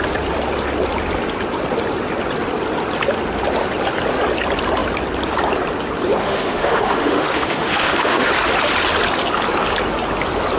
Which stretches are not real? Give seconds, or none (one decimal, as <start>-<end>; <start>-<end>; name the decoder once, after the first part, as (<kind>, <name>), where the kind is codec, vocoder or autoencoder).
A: 6.2-8.3 (autoencoder, DAC-VAE)